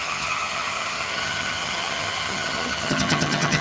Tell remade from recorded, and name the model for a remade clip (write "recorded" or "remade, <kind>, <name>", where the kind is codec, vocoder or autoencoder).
remade, vocoder, HiFi-GAN